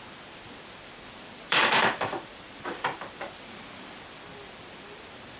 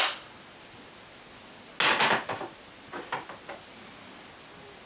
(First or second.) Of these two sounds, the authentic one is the second